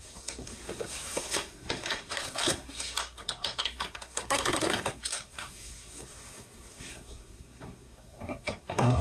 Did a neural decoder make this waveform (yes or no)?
yes